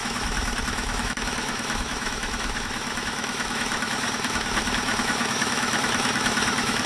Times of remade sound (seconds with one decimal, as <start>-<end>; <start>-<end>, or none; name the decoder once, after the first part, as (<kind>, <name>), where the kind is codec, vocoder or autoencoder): 0.0-6.9 (autoencoder, DAC-VAE)